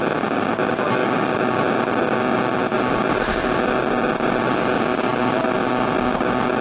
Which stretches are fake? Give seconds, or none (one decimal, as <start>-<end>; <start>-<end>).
none